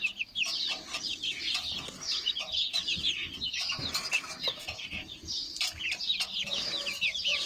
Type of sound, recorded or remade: recorded